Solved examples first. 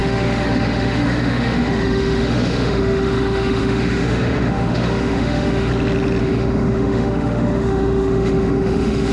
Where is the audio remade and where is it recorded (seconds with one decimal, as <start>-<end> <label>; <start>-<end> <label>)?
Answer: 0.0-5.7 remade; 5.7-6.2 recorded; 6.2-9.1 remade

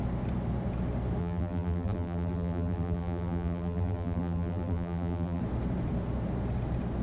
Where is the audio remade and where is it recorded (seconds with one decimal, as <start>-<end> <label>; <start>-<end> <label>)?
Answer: 0.0-1.2 recorded; 1.2-5.4 remade; 5.4-7.0 recorded

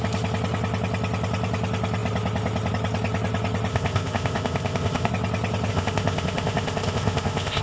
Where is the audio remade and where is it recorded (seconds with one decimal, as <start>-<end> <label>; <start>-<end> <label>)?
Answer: 0.0-3.7 recorded; 3.7-5.1 remade; 5.1-5.7 recorded; 5.7-7.6 remade